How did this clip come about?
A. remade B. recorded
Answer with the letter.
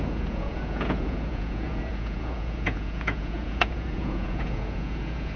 A